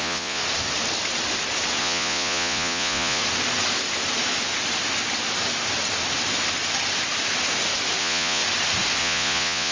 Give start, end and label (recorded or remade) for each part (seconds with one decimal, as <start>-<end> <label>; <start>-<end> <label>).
0.0-0.4 remade; 0.4-1.8 recorded; 1.8-3.2 remade; 3.2-8.0 recorded; 8.0-8.4 remade; 8.4-9.0 recorded; 9.0-9.7 remade